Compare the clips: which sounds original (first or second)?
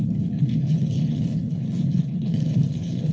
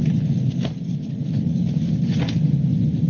second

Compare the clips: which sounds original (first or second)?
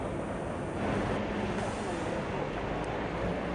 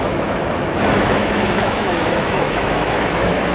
first